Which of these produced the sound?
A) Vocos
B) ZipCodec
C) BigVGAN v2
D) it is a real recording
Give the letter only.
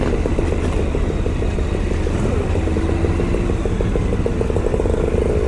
D